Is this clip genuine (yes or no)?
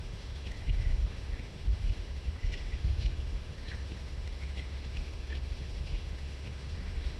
no